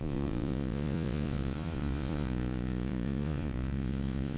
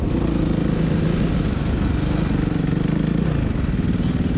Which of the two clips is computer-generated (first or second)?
first